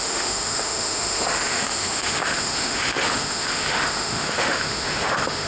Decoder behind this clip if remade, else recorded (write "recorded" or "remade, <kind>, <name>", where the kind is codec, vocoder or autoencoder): remade, autoencoder, DAC-VAE